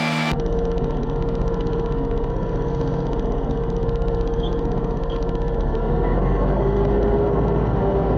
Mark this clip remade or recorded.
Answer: remade